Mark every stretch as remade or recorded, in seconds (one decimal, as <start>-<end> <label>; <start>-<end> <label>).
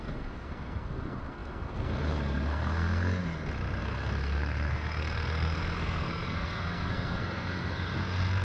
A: 0.0-3.2 remade; 3.2-3.8 recorded; 3.8-8.4 remade